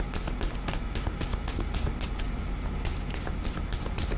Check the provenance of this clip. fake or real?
real